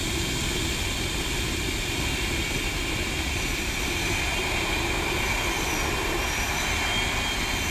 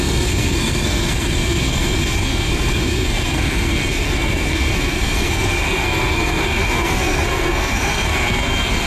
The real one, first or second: first